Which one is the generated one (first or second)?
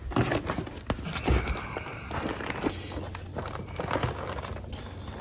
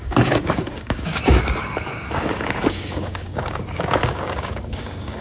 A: second